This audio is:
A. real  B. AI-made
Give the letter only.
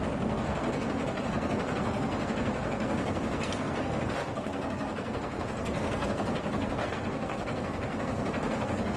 B